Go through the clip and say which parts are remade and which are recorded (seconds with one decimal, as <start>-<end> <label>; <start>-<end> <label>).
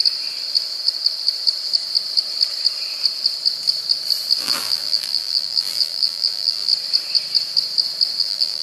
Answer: 0.0-4.4 recorded; 4.4-6.7 remade; 6.7-8.2 recorded; 8.2-8.6 remade